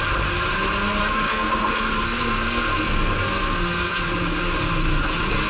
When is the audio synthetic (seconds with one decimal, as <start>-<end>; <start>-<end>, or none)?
1.0-4.0